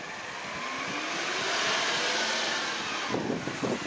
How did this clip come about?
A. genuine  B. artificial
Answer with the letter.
A